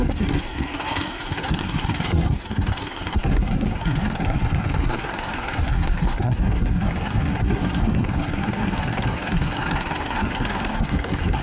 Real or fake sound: fake